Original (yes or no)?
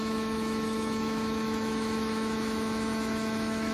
no